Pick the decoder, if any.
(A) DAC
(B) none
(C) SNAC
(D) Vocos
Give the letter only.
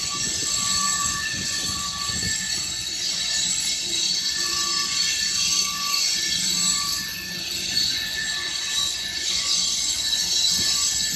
D